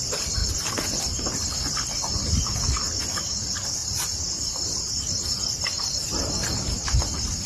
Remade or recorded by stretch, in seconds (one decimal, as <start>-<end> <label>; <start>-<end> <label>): 0.0-3.8 recorded; 3.8-4.5 remade; 4.5-7.5 recorded